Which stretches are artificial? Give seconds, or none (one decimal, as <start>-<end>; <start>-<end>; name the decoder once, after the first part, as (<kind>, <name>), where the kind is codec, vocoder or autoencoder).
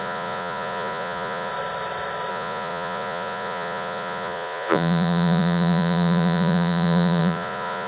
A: 0.0-1.5 (vocoder, Vocos); 2.3-7.9